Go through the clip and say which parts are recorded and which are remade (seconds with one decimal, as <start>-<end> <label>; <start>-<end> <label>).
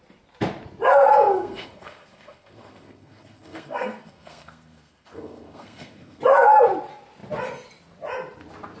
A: 0.0-1.3 recorded; 1.3-6.2 remade; 6.2-8.8 recorded